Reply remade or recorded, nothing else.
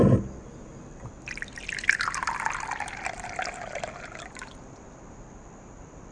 recorded